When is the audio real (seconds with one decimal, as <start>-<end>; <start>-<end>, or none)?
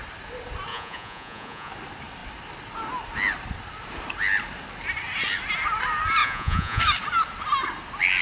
0.0-0.7; 1.7-6.2; 6.8-8.2